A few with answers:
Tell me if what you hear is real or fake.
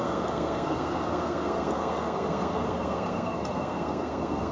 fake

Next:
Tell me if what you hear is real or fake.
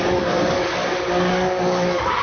fake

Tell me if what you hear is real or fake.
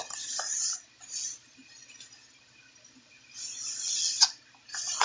real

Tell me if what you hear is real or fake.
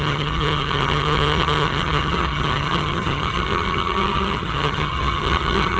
fake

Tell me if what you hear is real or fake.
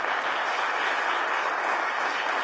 real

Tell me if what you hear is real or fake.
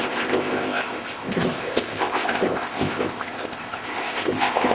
fake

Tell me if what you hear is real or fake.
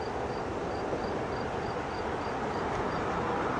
real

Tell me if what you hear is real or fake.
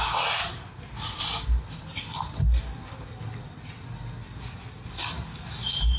real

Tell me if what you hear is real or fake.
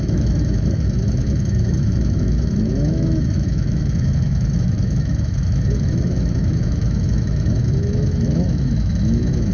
fake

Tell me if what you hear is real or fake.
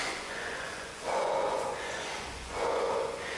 fake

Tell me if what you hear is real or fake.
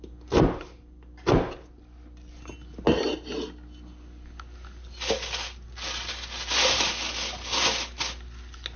real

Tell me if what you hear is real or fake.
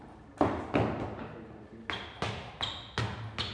real